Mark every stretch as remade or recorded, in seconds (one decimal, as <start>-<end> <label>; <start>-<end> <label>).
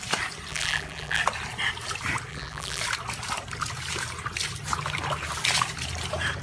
0.0-0.5 recorded; 0.5-1.2 remade; 1.2-2.3 recorded; 2.3-2.8 remade; 2.8-6.4 recorded